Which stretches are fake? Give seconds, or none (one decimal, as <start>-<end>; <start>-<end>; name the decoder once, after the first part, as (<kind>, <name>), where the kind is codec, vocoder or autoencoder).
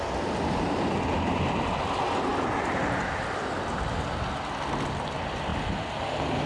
none